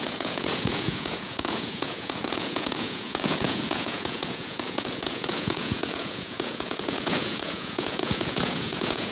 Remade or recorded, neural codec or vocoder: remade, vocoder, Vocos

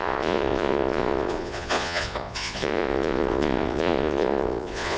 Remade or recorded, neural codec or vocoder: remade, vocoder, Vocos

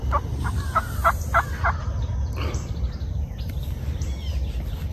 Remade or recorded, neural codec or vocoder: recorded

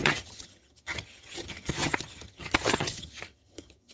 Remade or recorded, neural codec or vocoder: remade, vocoder, HiFi-GAN